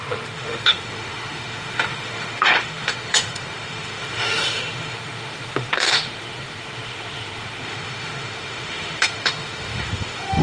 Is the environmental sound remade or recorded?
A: remade